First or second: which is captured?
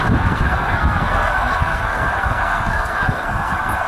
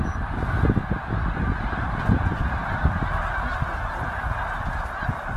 second